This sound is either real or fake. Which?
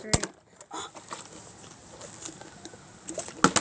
real